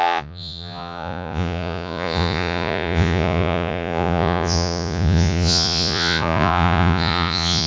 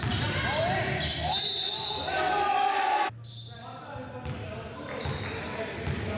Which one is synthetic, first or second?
first